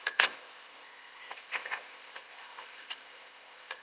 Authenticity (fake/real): fake